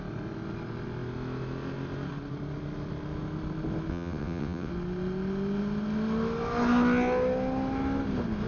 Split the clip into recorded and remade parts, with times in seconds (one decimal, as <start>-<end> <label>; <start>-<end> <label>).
0.0-3.9 recorded; 3.9-4.7 remade; 4.7-8.5 recorded